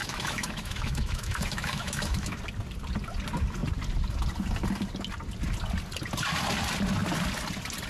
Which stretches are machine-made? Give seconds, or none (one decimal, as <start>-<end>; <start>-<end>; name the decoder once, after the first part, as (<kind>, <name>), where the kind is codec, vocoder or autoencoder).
0.0-2.4 (autoencoder, DAC-VAE)